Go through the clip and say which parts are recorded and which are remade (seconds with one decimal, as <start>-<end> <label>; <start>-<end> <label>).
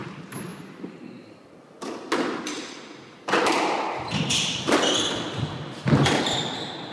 0.0-6.9 recorded